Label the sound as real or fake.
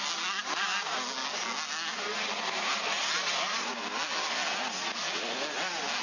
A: real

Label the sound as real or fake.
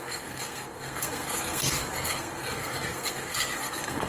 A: fake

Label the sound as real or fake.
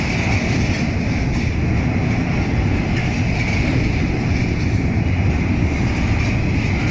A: real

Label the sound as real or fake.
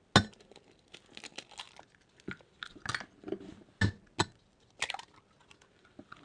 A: real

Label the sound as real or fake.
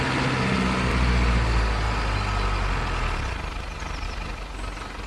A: real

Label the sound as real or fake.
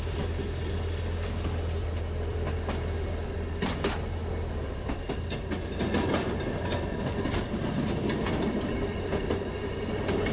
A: real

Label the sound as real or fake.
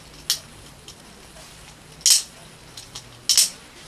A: real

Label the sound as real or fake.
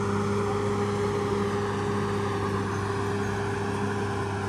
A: real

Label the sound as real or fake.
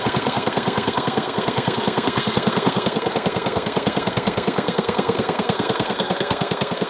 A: fake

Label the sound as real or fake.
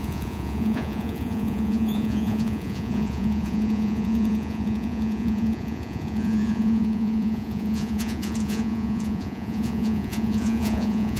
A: fake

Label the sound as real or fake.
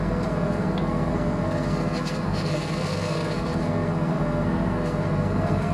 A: fake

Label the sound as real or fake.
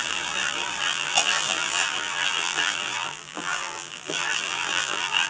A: fake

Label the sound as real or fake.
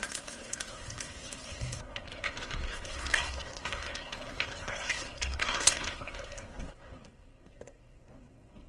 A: fake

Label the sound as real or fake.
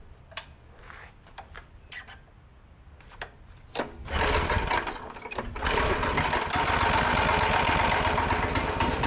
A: real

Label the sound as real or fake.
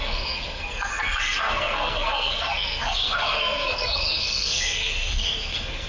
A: fake